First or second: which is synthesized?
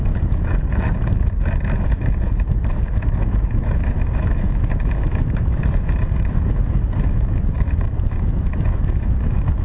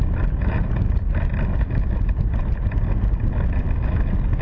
first